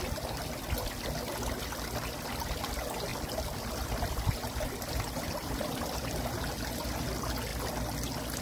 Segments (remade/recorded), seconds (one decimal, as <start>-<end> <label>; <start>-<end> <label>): 0.0-3.1 recorded; 3.1-6.0 remade; 6.0-8.4 recorded

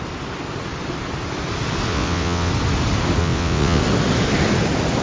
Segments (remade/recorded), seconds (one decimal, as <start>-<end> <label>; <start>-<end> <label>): 0.0-1.9 recorded; 1.9-2.5 remade; 2.5-3.2 recorded; 3.2-3.8 remade; 3.8-5.0 recorded

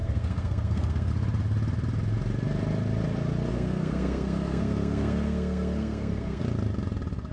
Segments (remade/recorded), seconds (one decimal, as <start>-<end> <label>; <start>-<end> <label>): 0.0-1.1 remade; 1.1-3.5 recorded; 3.5-6.4 remade; 6.4-7.3 recorded

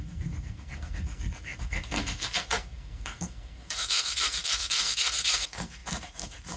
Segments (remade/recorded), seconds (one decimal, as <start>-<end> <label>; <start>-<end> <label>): 0.0-6.6 remade

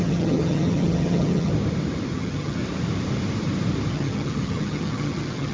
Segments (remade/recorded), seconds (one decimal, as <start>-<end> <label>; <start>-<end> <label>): 0.0-1.5 remade; 1.5-2.1 recorded; 2.1-2.6 remade; 2.6-3.9 recorded; 3.9-5.5 remade

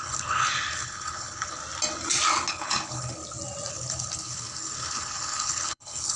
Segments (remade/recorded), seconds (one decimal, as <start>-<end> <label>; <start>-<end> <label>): 0.0-1.6 remade; 1.6-2.5 recorded; 2.5-3.2 remade; 3.2-3.7 recorded; 3.7-6.2 remade

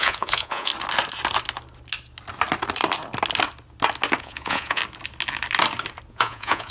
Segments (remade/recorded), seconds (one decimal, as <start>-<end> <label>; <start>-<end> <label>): 0.0-0.7 remade; 0.7-4.2 recorded; 4.2-4.8 remade; 4.8-6.1 recorded; 6.1-6.7 remade

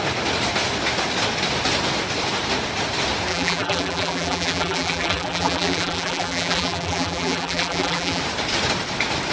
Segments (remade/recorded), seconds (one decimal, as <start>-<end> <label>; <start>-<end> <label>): 0.0-3.3 recorded; 3.3-8.2 remade; 8.2-9.3 recorded